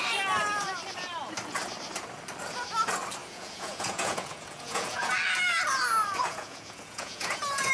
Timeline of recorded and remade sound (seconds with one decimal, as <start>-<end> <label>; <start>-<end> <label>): 0.0-3.2 recorded; 3.2-5.1 remade; 5.1-6.2 recorded; 6.2-7.7 remade